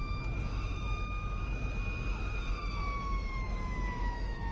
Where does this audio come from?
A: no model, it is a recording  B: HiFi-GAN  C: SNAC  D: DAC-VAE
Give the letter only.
D